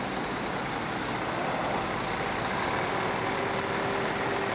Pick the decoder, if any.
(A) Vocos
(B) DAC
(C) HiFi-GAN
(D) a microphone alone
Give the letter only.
D